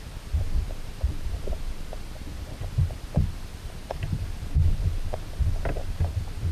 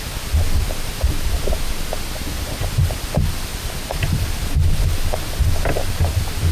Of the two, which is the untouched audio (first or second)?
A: second